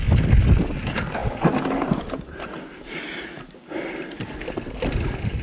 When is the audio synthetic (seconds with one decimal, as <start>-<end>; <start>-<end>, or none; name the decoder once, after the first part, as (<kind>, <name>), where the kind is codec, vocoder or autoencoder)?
none